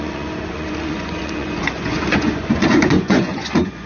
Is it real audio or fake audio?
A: fake